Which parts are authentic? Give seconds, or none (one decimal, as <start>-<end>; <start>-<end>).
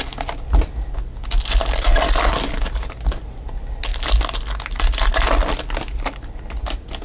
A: 0.0-7.0